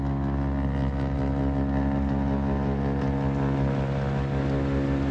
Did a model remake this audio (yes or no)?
no